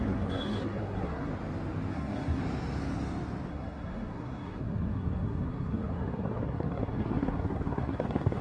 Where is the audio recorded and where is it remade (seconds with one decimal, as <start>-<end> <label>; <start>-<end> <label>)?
0.0-1.3 remade; 1.3-1.9 recorded; 1.9-2.4 remade; 2.4-3.5 recorded; 3.5-8.4 remade